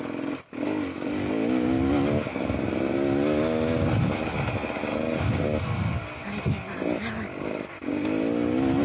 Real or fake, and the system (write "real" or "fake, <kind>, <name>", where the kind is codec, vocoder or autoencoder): real